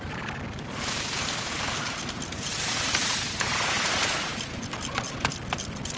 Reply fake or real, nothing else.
real